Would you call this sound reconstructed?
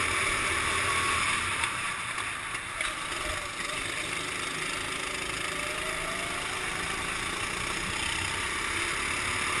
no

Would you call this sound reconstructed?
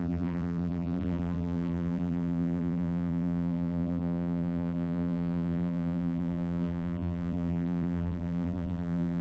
yes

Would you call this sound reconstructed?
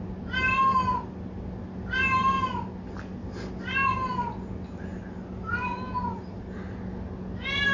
no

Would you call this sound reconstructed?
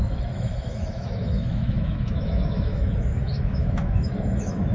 yes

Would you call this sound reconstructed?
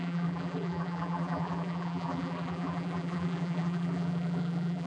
yes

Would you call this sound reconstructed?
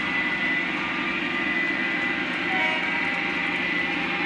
no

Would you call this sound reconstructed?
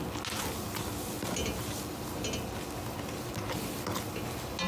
no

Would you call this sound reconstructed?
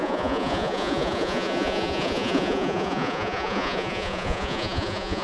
yes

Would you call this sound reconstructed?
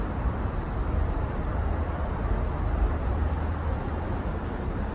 no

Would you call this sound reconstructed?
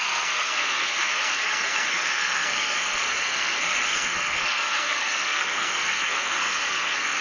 yes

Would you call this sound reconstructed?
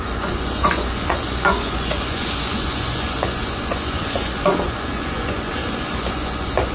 yes